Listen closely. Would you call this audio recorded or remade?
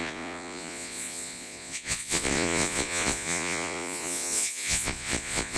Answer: remade